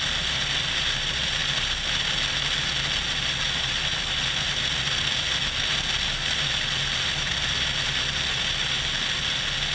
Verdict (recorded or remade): recorded